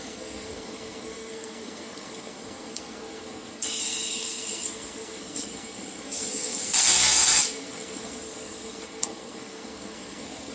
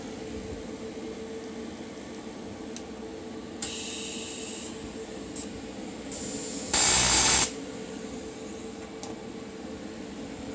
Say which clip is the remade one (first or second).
first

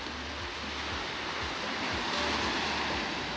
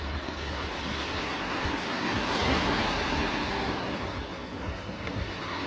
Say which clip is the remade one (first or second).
second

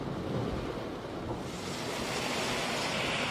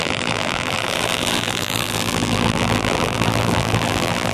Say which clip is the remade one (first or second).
second